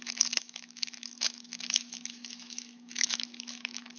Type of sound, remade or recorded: remade